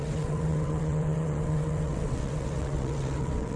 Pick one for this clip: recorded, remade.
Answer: remade